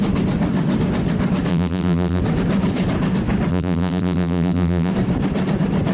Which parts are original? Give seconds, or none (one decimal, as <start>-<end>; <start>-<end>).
0.0-1.5; 2.2-3.5; 4.9-5.9